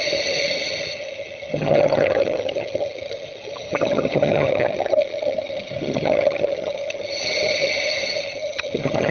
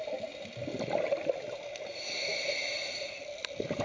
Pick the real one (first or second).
second